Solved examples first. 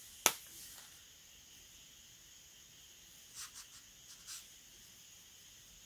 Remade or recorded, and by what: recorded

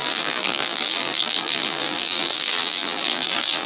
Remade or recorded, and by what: remade, vocoder, BigVGAN v2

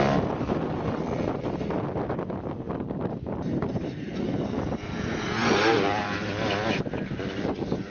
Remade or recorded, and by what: recorded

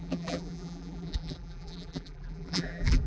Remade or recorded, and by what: remade, vocoder, BigVGAN v2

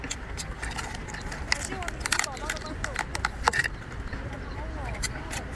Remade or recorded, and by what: recorded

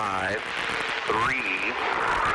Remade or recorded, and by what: recorded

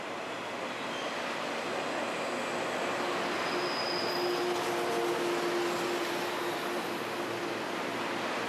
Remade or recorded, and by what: recorded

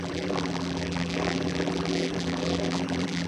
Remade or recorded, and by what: remade, vocoder, BigVGAN v2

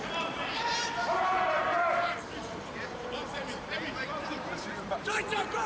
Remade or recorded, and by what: remade, vocoder, BigVGAN v2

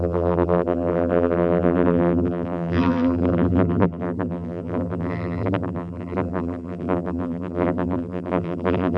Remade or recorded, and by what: remade, vocoder, BigVGAN v2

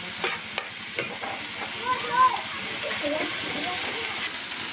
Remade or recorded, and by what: recorded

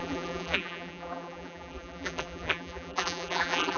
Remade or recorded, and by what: remade, vocoder, BigVGAN v2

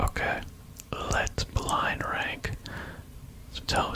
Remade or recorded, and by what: remade, vocoder, BigVGAN v2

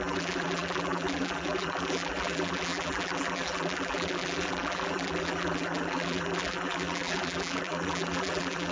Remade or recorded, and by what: remade, vocoder, BigVGAN v2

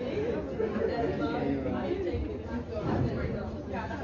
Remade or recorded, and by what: recorded